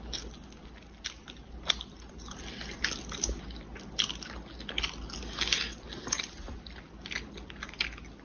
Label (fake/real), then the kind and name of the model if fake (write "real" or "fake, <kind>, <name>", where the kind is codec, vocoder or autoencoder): real